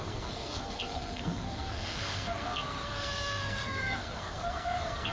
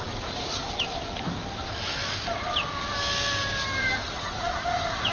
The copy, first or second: first